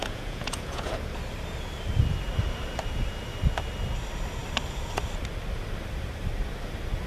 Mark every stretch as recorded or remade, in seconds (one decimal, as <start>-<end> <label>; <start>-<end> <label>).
0.0-0.9 remade; 0.9-7.1 recorded